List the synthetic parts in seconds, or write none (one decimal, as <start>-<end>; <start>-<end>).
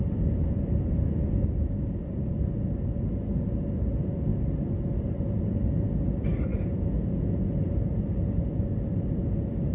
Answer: 6.5-8.1